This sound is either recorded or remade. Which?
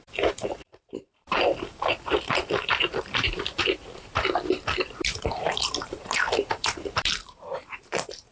remade